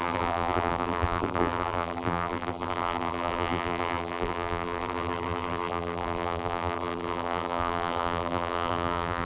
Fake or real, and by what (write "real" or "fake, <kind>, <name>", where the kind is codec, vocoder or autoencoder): fake, vocoder, BigVGAN v2